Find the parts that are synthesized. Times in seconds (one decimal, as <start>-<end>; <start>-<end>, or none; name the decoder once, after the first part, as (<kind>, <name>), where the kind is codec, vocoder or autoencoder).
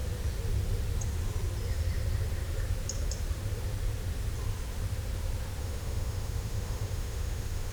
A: 5.6-7.7 (autoencoder, DAC-VAE)